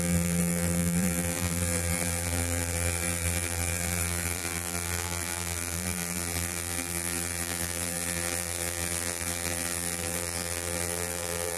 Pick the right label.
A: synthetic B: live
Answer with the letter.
A